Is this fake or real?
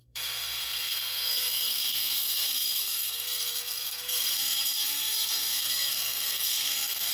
fake